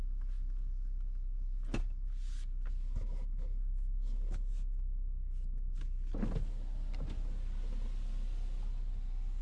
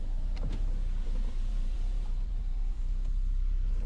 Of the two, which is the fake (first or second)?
second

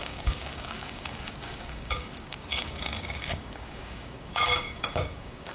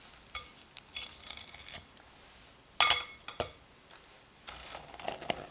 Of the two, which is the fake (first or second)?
first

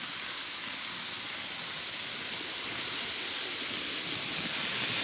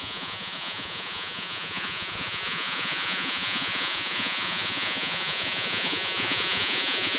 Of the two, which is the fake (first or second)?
second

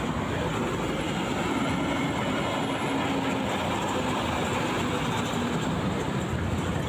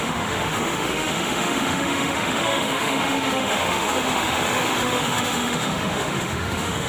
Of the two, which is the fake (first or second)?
second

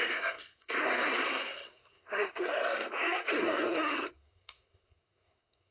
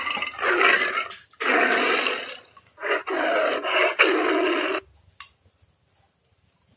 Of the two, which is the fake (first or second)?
first